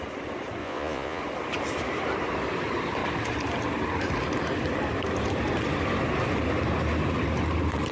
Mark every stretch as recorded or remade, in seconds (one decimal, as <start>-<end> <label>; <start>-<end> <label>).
0.0-0.6 recorded; 0.6-1.2 remade; 1.2-7.9 recorded